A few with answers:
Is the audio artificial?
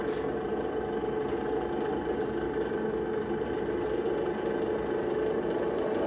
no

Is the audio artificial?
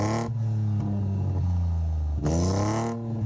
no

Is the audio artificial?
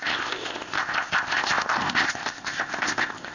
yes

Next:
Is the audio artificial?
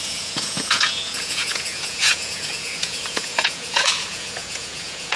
yes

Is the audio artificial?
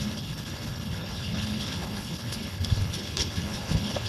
yes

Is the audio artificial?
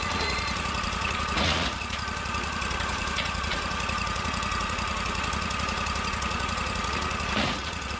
yes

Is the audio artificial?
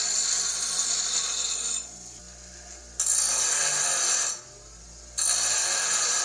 no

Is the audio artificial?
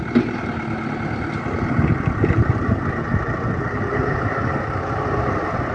no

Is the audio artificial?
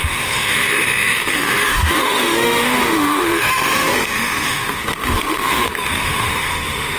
yes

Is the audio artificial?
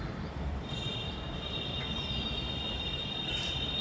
yes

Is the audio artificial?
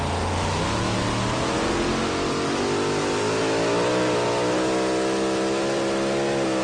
no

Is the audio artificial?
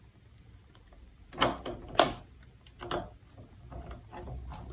no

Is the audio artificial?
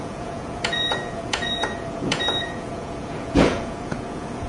yes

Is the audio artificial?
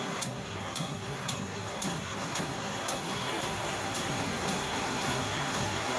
yes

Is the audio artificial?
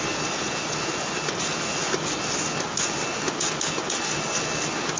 no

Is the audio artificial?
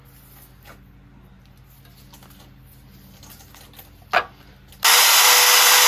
no